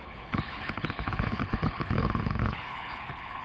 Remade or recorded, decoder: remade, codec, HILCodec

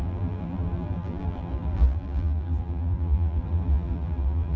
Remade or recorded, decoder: remade, vocoder, BigVGAN v2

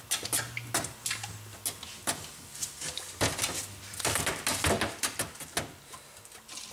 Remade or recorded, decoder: recorded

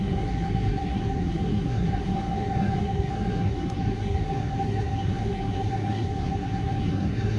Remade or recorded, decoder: remade, codec, SNAC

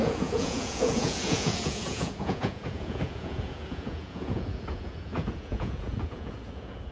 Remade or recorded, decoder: remade, vocoder, Vocos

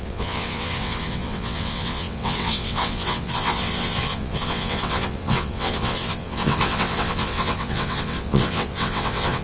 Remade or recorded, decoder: remade, vocoder, WaveNeXt